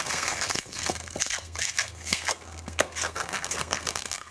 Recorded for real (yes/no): no